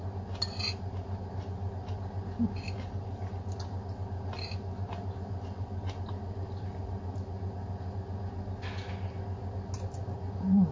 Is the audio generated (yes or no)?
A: no